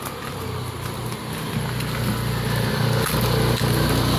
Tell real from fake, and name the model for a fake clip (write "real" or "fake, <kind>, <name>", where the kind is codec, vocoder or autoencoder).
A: real